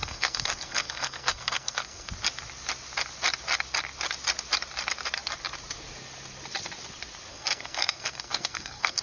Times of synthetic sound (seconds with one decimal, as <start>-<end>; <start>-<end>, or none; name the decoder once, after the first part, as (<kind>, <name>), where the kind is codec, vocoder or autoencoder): 0.0-2.1 (codec, SNAC); 7.3-9.0